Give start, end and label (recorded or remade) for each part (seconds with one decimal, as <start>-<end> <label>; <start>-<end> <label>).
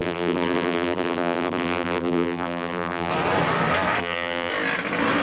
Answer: 0.0-3.1 remade; 3.1-4.0 recorded; 4.0-4.5 remade; 4.5-5.2 recorded